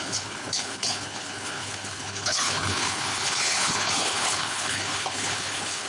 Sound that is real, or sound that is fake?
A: fake